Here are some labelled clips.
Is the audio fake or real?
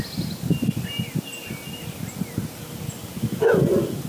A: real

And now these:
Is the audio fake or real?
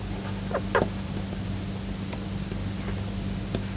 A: real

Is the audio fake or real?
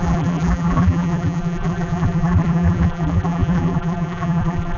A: fake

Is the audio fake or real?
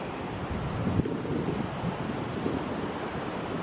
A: real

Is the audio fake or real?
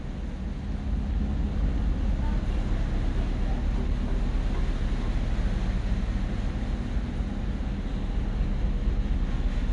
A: real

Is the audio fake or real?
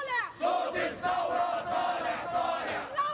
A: fake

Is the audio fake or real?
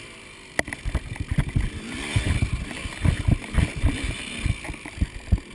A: fake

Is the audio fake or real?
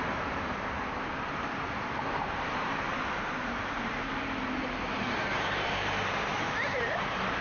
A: fake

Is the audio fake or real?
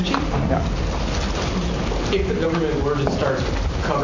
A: real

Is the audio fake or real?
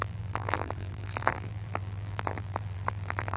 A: fake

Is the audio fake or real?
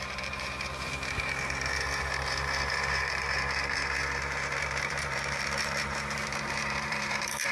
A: fake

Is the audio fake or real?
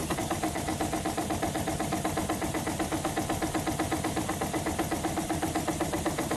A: real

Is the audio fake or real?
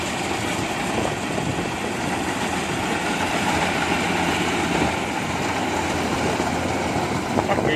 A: fake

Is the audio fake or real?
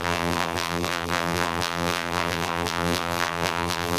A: fake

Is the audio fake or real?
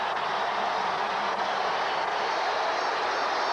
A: real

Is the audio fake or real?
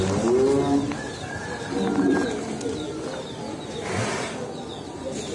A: real